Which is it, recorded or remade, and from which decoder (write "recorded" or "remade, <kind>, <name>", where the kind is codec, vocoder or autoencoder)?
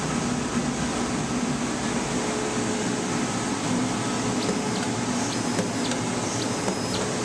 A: recorded